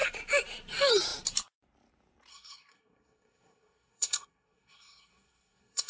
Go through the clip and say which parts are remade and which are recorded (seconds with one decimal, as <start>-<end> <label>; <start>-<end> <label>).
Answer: 0.0-2.3 recorded; 2.3-5.9 remade